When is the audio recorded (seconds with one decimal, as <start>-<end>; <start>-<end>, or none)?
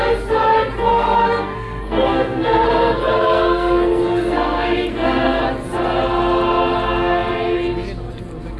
0.0-0.9; 5.4-8.6